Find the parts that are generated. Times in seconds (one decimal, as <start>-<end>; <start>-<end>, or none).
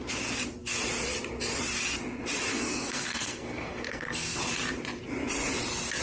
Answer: 2.5-4.4